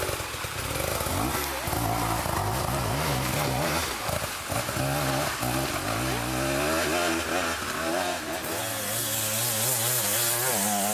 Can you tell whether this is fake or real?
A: real